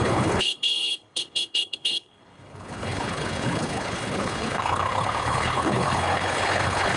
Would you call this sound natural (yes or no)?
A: no